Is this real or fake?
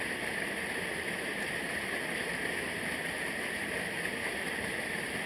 real